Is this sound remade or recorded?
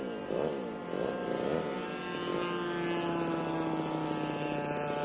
recorded